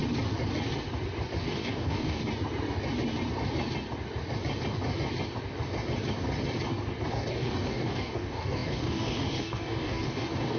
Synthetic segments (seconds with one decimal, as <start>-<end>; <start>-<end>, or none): 1.4-2.2; 7.1-10.6